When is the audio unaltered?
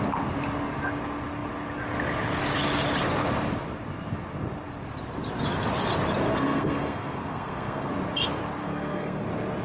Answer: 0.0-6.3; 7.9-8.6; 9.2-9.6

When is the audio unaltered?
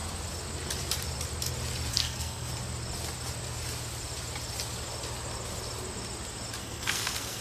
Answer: 0.0-1.9; 2.5-6.6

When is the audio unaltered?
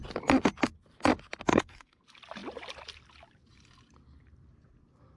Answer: 0.0-1.5; 2.0-5.2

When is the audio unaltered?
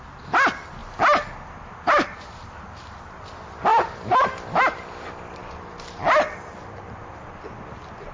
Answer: 0.0-8.1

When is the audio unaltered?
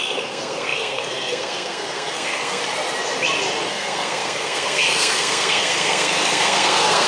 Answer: 2.6-3.7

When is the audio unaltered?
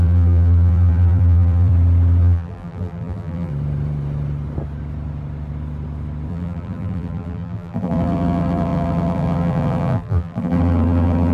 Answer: 1.7-2.2; 3.5-6.3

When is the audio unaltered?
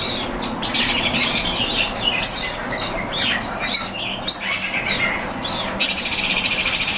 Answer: 2.6-5.6